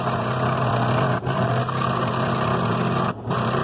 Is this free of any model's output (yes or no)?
yes